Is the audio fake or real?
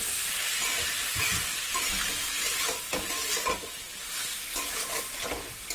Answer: real